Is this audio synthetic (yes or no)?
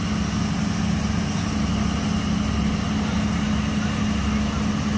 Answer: no